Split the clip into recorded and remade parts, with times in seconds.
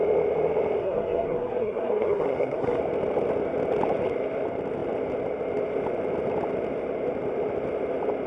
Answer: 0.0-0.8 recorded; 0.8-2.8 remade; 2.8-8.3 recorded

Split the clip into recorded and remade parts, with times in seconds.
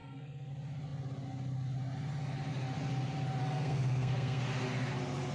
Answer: 0.0-0.5 remade; 0.5-3.4 recorded; 3.4-4.4 remade; 4.4-5.3 recorded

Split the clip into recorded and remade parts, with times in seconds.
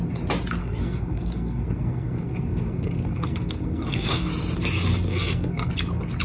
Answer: 0.0-0.6 recorded; 0.6-4.3 remade; 4.3-5.1 recorded; 5.1-5.7 remade; 5.7-6.2 recorded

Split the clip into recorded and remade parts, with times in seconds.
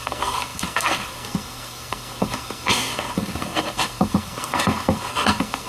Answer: 0.0-5.7 remade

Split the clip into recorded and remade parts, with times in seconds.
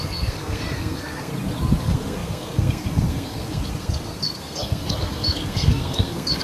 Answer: 0.0-1.3 remade; 1.3-1.8 recorded; 1.8-6.4 remade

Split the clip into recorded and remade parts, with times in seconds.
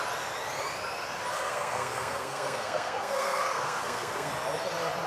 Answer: 0.0-1.3 recorded; 1.3-4.3 remade; 4.3-5.1 recorded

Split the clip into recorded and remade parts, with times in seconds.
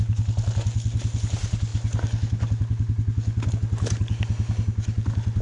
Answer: 0.0-5.4 recorded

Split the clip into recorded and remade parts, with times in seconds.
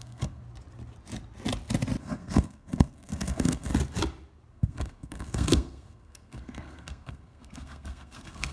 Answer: 0.0-0.4 remade; 0.4-2.0 recorded; 2.0-3.7 remade; 3.7-4.5 recorded; 4.5-8.5 remade